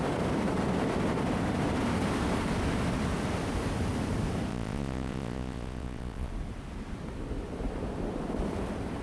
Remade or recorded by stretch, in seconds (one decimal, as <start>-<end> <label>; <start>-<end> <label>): 0.0-4.5 recorded; 4.5-6.3 remade; 6.3-9.0 recorded